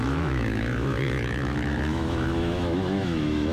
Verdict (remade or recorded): remade